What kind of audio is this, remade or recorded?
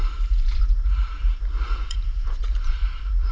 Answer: remade